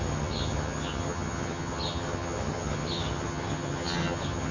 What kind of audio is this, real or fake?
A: fake